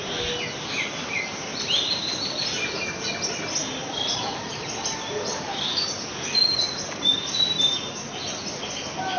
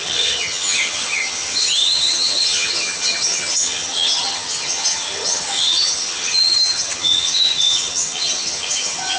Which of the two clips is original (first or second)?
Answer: first